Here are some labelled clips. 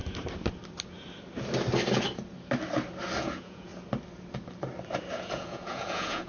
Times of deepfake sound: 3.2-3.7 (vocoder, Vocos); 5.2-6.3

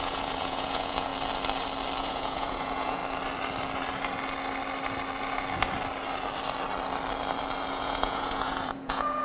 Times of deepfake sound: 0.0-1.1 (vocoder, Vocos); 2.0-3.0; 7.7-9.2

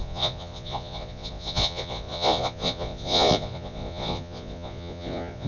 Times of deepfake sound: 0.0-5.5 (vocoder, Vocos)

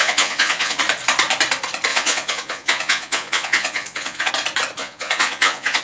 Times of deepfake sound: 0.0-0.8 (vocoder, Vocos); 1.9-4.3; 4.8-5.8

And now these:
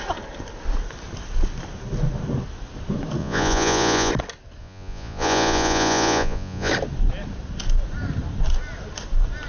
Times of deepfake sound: 3.2-4.1 (vocoder, Vocos); 4.6-6.7

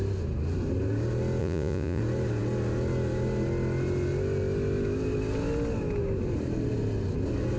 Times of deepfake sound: 1.4-2.0 (vocoder, Vocos)

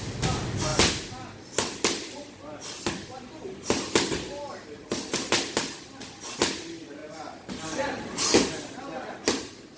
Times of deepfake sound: none

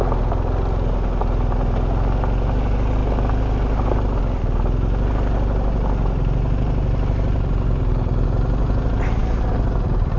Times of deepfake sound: none